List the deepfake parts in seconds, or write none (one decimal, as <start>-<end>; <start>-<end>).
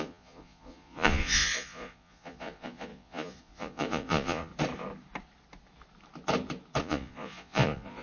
0.0-4.5; 6.8-8.0